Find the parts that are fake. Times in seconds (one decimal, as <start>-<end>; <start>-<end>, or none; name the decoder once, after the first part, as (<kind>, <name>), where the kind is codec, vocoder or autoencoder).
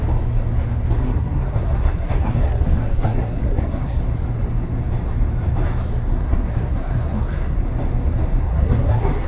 1.0-4.0 (codec, SNAC); 6.1-7.6; 8.4-9.3